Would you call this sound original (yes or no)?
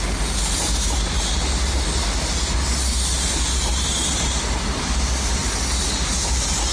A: yes